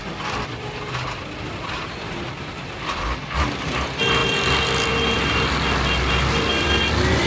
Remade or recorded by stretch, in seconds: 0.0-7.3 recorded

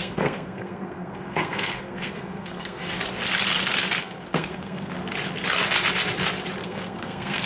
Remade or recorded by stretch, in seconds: 0.0-2.8 remade; 2.8-4.0 recorded; 4.0-4.9 remade; 4.9-6.6 recorded; 6.6-7.5 remade

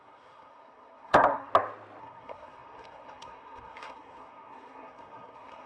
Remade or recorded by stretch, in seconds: 0.0-1.5 remade; 1.5-2.0 recorded; 2.0-5.7 remade

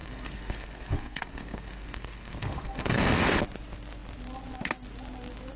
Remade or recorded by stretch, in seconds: 0.0-3.4 remade; 3.4-5.6 recorded

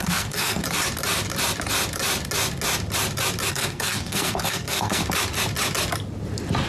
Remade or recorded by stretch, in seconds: 0.0-0.6 remade; 0.6-3.5 recorded; 3.5-5.0 remade; 5.0-6.7 recorded

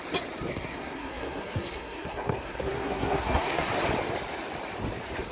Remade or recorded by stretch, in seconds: 0.0-0.5 recorded; 0.5-3.7 remade; 3.7-5.3 recorded

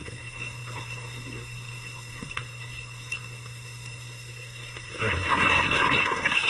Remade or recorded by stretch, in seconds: 0.0-6.5 remade

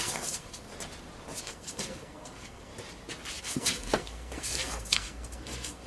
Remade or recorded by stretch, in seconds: 0.0-0.7 remade; 0.7-1.4 recorded; 1.4-2.7 remade; 2.7-3.4 recorded; 3.4-5.9 remade